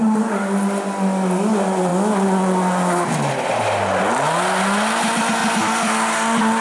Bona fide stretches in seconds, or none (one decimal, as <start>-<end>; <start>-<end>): 0.0-6.6